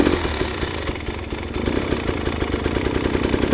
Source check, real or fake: real